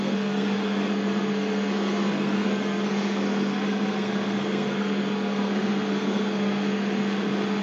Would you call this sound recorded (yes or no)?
no